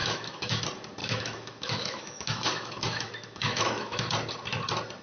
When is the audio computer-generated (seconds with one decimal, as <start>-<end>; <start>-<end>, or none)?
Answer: 0.0-0.6; 1.0-4.0